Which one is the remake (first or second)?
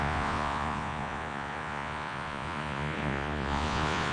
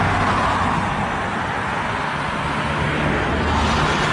first